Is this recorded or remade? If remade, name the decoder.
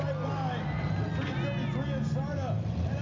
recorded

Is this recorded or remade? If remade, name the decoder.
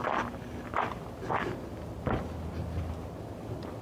recorded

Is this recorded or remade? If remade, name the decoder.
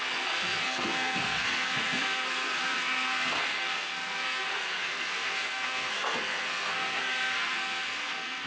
remade, codec, SNAC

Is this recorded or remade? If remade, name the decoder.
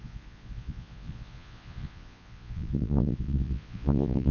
remade, vocoder, Vocos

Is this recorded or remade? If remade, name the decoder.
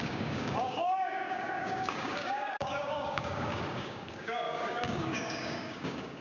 remade, codec, DAC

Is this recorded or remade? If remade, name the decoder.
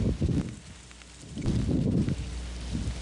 recorded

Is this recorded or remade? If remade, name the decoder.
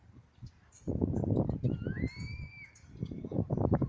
remade, vocoder, BigVGAN v2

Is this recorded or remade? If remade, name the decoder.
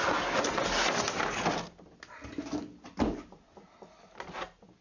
recorded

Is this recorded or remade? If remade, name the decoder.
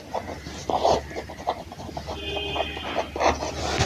recorded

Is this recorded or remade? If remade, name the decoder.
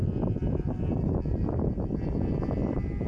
recorded